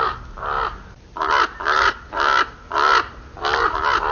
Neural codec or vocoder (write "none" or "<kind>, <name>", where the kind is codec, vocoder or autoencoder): none